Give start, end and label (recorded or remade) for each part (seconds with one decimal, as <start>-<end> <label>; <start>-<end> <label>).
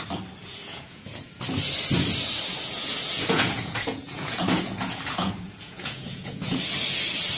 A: 0.0-0.4 recorded; 0.4-1.4 remade; 1.4-2.5 recorded; 2.5-6.6 remade; 6.6-7.4 recorded